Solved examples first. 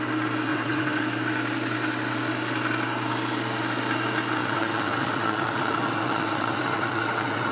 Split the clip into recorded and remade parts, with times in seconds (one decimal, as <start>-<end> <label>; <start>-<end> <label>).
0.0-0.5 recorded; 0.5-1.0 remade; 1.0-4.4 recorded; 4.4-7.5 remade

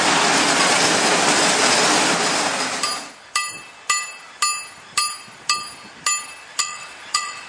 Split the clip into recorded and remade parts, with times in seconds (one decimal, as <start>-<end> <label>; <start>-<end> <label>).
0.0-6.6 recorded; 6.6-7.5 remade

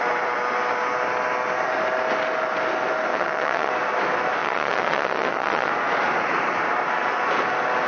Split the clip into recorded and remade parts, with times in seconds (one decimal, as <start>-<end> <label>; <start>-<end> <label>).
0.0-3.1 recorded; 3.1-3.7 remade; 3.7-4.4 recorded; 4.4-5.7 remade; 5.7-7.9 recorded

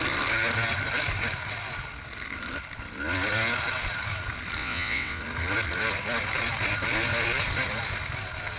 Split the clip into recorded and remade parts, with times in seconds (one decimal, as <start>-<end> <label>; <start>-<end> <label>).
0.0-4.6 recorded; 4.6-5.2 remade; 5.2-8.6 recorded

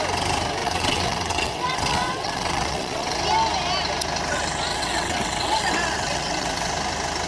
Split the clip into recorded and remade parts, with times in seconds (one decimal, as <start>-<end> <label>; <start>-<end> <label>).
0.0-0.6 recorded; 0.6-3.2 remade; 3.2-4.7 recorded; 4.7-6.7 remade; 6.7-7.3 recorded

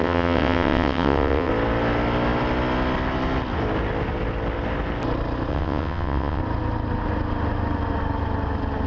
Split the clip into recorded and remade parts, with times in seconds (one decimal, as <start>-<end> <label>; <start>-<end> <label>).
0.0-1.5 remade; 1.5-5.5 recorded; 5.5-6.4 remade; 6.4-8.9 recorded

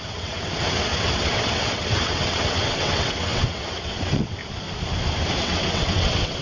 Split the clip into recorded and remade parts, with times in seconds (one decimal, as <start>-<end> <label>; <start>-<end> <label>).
0.0-4.4 remade; 4.4-5.4 recorded; 5.4-6.4 remade